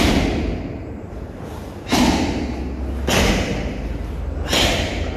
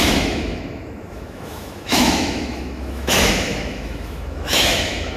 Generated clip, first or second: second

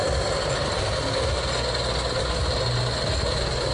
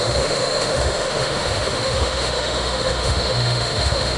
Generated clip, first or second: second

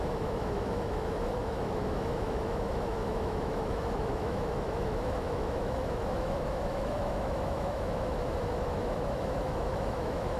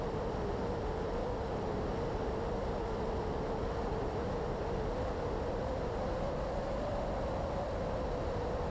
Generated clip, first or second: first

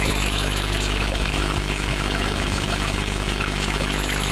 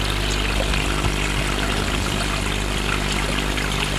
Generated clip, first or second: first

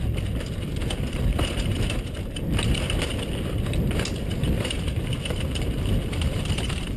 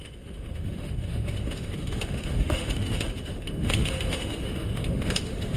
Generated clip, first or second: second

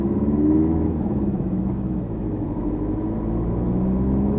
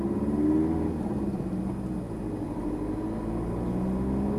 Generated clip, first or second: first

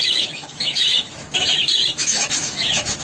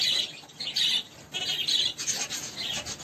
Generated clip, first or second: first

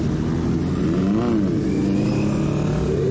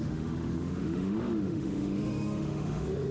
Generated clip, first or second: second